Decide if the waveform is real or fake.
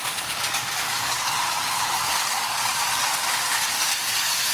fake